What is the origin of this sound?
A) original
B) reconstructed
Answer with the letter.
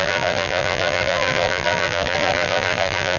B